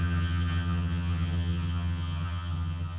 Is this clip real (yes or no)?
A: no